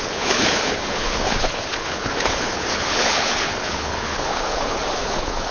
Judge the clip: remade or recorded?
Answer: remade